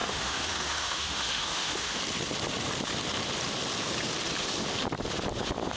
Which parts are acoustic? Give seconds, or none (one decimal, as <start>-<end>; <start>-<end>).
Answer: 2.0-5.8